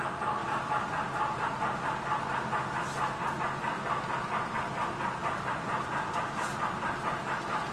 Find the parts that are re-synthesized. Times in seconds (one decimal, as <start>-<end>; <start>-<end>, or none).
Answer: 5.2-6.6